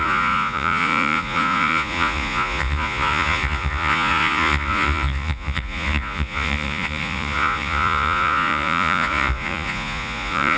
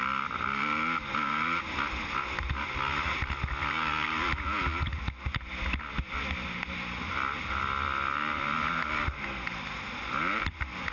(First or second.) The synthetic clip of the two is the first